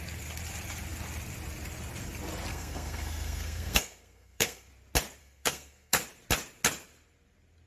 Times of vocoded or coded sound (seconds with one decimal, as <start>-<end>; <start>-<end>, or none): 2.5-4.7; 5.2-6.0